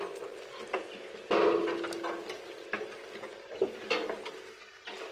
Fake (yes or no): no